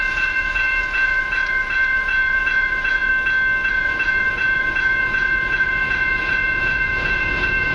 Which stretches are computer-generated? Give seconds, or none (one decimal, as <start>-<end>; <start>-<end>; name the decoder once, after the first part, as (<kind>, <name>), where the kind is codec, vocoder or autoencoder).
0.0-3.1 (vocoder, Vocos); 3.7-7.7